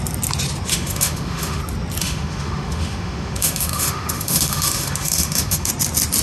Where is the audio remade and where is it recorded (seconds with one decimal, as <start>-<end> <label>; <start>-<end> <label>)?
0.0-0.7 recorded; 0.7-1.6 remade; 1.6-2.0 recorded; 2.0-5.7 remade; 5.7-6.2 recorded